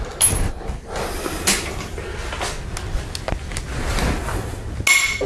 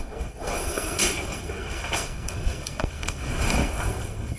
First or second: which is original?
first